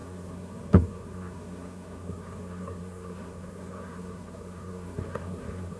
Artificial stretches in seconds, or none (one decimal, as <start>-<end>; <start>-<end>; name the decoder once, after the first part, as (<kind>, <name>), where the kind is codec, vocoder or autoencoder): 0.0-5.8 (codec, SNAC)